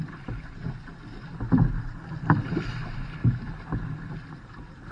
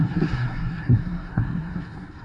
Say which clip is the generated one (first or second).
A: second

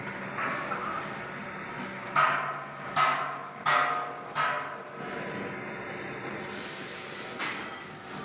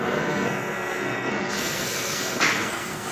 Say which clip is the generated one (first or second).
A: second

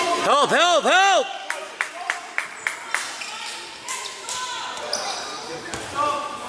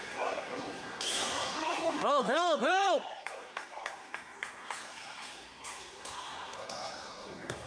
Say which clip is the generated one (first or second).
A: second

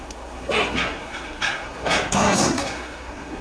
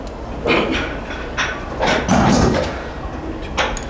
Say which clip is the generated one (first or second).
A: first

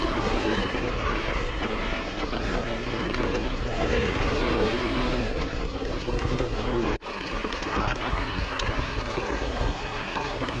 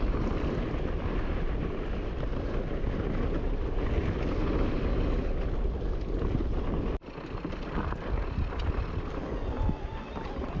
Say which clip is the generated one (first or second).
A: first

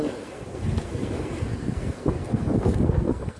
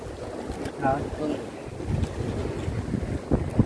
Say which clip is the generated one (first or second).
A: first